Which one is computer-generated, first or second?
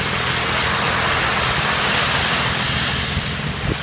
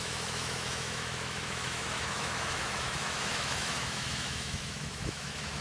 second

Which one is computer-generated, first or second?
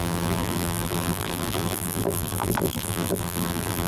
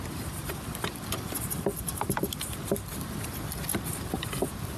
first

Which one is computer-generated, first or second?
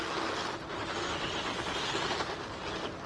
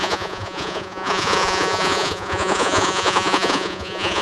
second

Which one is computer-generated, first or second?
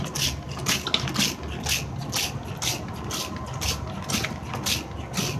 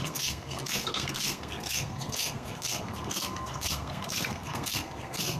second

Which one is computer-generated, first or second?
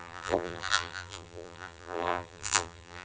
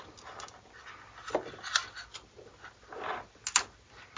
first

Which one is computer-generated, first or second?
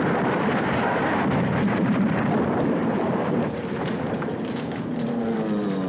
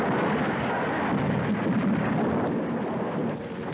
first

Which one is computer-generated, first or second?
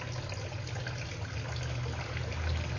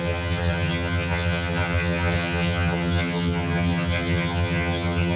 second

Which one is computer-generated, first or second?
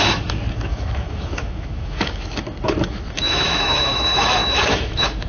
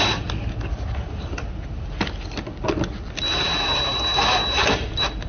first